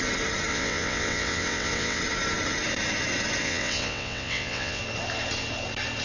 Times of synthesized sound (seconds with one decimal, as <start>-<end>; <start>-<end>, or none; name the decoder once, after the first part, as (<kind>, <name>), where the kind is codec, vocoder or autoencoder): 0.5-2.0 (vocoder, WaveNeXt); 3.4-4.8